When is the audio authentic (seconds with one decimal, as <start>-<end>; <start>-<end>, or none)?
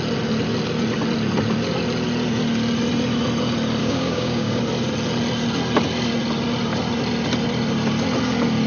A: 0.0-3.8; 4.6-8.7